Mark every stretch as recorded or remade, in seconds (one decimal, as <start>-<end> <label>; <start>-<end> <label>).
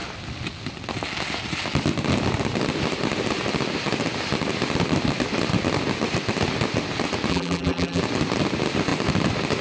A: 0.0-7.3 recorded; 7.3-8.0 remade; 8.0-9.6 recorded